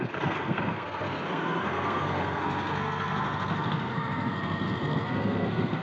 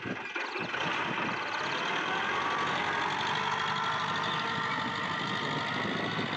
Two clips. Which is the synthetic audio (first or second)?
first